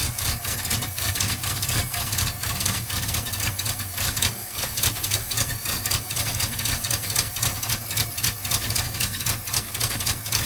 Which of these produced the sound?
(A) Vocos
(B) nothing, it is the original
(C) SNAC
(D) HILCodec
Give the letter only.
C